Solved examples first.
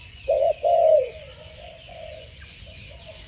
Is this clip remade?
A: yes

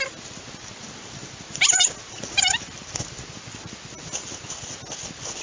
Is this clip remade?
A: no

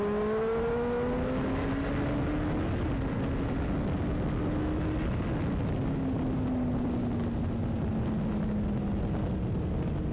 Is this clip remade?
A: no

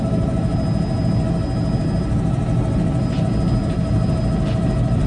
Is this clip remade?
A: no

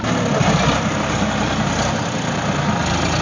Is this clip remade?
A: no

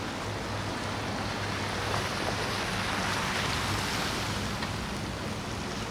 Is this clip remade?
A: no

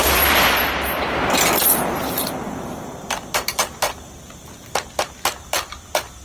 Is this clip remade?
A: no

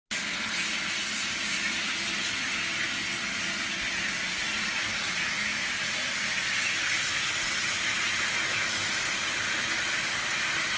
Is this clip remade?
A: no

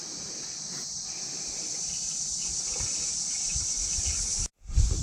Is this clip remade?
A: no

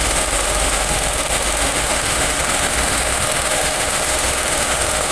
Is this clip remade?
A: yes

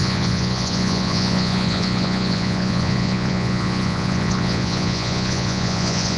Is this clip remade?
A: yes